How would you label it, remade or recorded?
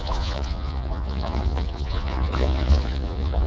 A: remade